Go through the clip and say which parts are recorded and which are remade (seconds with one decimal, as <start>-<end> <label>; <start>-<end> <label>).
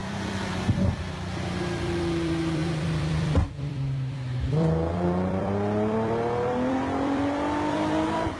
0.0-8.4 remade